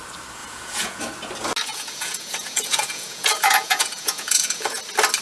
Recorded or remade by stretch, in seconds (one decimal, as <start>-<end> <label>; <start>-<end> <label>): 0.0-0.4 recorded; 0.4-1.0 remade; 1.0-1.7 recorded; 1.7-4.8 remade; 4.8-5.2 recorded